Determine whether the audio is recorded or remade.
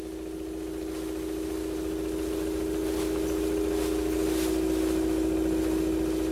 recorded